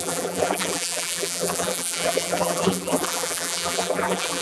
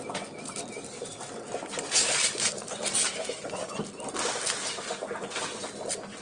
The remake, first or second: first